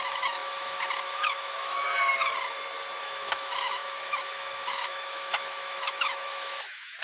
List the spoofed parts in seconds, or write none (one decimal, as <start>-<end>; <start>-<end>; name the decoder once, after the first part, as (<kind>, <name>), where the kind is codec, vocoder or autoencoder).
0.0-2.3 (autoencoder, DAC-VAE); 3.0-7.0